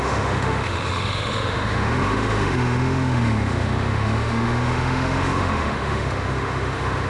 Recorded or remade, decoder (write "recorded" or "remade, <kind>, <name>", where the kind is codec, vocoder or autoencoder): remade, autoencoder, DAC-VAE